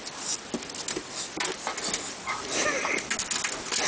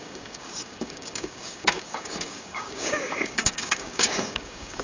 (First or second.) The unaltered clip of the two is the first